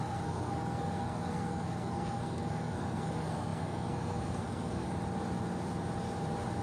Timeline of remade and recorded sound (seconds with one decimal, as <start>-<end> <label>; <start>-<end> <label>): 0.0-4.8 remade; 4.8-6.6 recorded